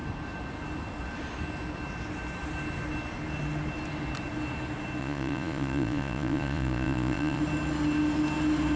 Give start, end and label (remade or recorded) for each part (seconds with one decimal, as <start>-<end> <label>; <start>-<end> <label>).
0.0-5.0 recorded; 5.0-7.4 remade; 7.4-8.8 recorded